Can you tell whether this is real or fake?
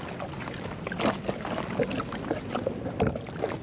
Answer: real